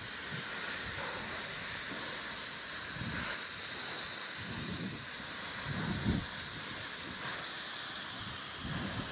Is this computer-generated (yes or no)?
no